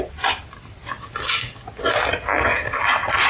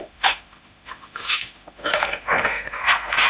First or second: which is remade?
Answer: second